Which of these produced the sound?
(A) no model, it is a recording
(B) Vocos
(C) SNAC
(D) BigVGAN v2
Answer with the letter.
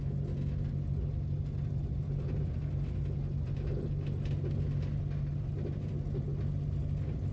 A